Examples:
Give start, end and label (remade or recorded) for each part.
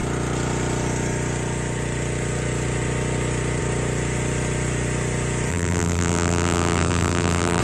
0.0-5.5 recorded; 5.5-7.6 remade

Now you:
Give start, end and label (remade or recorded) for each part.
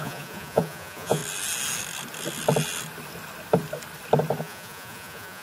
0.0-1.2 remade; 1.2-4.4 recorded; 4.4-5.4 remade